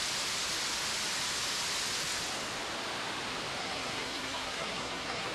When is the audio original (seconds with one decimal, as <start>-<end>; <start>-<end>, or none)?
0.0-3.6